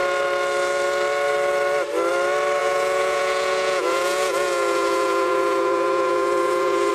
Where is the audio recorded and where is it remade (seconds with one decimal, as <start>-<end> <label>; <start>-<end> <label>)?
0.0-2.6 recorded; 2.6-6.9 remade